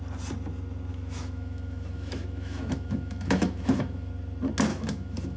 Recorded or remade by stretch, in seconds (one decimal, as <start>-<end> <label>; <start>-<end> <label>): 0.0-0.9 recorded; 0.9-4.1 remade; 4.1-4.7 recorded; 4.7-5.4 remade